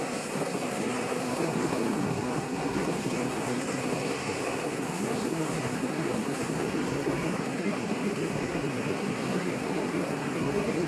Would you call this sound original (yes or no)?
no